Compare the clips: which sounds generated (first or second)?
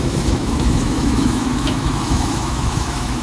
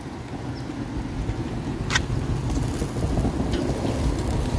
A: first